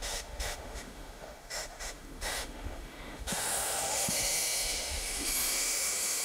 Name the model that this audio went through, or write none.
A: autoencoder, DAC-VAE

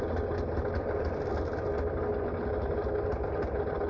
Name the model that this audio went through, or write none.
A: none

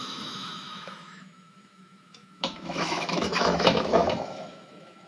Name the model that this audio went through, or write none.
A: autoencoder, DAC-VAE